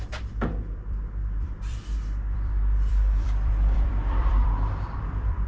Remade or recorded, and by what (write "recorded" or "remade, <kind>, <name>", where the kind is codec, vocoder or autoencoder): remade, vocoder, BigVGAN v2